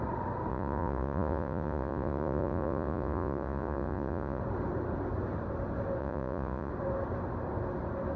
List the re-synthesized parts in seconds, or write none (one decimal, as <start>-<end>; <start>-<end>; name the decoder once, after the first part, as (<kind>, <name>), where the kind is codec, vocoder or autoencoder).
0.5-4.4 (vocoder, Vocos); 6.0-6.7